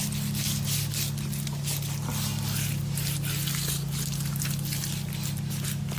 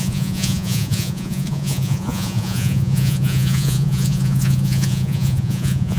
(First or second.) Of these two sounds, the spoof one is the second